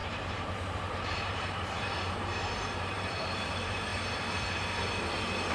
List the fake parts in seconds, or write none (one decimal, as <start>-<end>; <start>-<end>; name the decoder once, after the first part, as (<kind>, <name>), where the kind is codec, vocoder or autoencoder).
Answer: 0.0-3.9 (vocoder, BigVGAN v2)